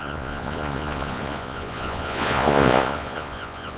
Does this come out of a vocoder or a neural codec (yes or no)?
yes